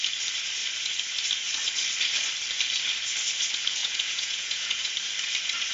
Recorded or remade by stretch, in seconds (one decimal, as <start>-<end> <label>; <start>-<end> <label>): 0.0-3.8 recorded; 3.8-4.9 remade; 4.9-5.7 recorded